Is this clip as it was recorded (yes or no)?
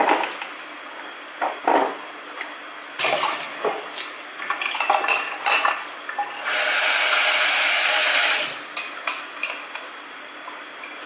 yes